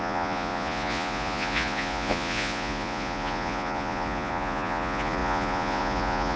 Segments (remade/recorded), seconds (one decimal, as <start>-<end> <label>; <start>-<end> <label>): 0.0-6.4 remade